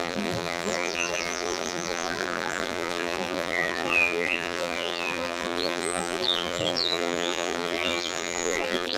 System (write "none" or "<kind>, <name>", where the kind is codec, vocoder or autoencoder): vocoder, BigVGAN v2